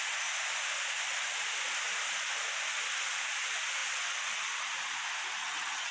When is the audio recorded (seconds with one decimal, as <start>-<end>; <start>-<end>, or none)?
0.0-5.4